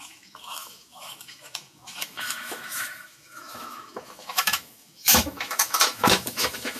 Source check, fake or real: fake